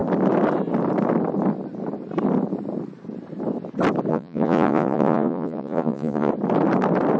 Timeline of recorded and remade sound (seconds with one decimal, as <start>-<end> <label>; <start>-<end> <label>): 0.0-4.1 recorded; 4.1-6.3 remade; 6.3-7.2 recorded